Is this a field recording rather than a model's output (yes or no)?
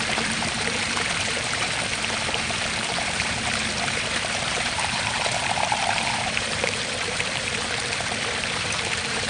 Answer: no